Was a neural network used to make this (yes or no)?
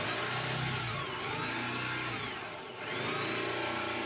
no